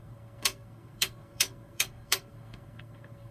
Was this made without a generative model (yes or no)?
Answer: no